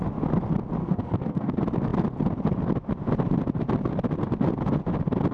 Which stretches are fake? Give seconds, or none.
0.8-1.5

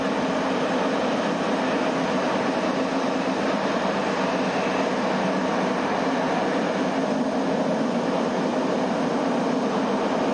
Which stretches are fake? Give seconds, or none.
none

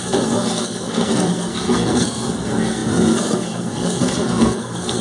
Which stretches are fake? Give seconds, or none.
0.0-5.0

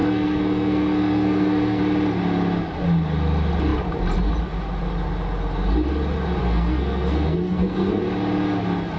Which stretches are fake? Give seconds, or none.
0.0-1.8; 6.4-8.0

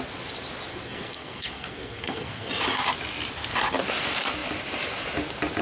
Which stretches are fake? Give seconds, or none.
0.7-2.5

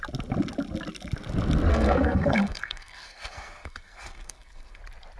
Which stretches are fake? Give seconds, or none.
1.7-4.8